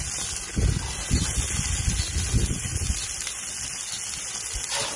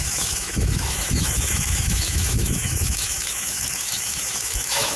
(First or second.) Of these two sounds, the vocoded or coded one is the second